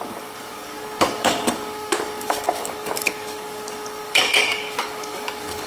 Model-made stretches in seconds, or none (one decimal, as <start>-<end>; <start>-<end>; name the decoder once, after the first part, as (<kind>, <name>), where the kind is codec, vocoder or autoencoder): 0.0-5.7 (codec, DAC)